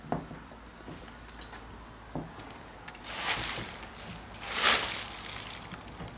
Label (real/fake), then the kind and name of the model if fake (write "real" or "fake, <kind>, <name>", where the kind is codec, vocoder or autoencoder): real